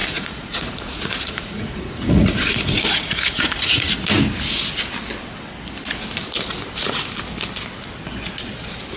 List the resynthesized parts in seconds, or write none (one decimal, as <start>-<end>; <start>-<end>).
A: 0.0-3.9